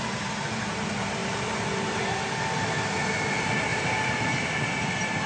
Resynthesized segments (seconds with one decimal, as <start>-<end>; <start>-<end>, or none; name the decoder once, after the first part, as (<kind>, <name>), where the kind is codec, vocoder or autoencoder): 1.2-2.0 (vocoder, BigVGAN v2); 3.7-4.5